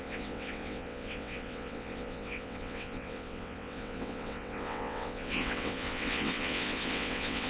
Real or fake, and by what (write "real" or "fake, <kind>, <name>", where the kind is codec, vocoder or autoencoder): fake, vocoder, WaveNeXt